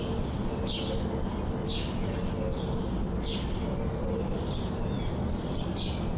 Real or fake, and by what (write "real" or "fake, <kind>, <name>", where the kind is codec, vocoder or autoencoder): real